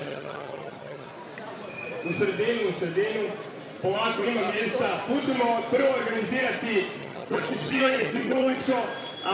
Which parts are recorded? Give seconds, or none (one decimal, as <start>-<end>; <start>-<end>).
1.1-7.0; 8.6-9.3